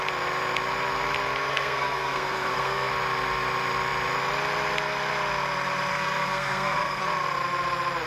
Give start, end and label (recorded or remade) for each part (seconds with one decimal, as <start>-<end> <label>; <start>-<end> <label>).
0.0-1.5 recorded; 1.5-2.9 remade; 2.9-5.9 recorded; 5.9-7.0 remade; 7.0-8.1 recorded